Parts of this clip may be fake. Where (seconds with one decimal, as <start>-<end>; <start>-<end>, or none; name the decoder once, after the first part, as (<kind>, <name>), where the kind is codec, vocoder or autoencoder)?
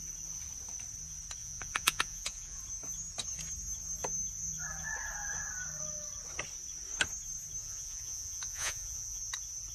1.4-2.6 (vocoder, Vocos); 7.6-9.2